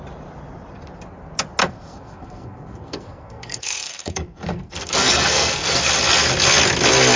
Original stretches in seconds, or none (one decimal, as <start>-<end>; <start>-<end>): 0.0-1.6; 5.9-7.2